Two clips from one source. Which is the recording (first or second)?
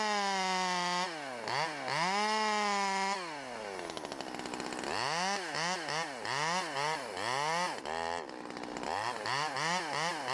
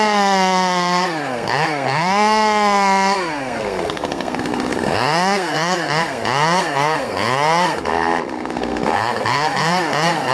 first